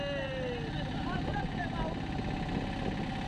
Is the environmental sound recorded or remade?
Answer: recorded